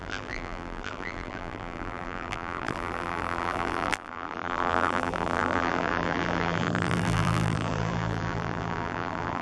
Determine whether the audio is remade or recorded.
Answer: remade